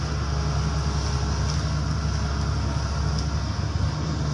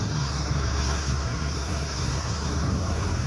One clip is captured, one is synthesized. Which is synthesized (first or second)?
second